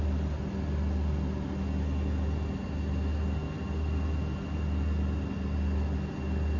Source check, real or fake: real